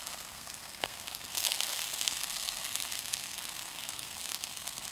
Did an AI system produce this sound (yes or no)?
yes